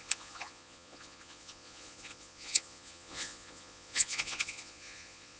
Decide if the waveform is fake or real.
fake